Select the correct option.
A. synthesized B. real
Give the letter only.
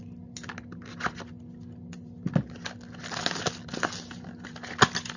B